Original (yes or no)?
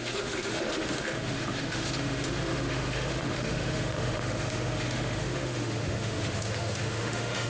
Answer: no